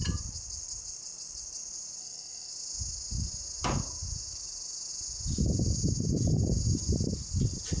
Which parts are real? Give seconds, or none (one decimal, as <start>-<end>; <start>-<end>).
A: 0.0-2.0; 2.5-7.8